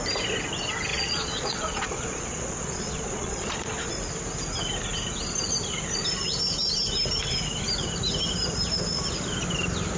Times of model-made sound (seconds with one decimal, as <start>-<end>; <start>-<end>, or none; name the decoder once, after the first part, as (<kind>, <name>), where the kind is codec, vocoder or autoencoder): 0.9-3.9 (vocoder, Vocos)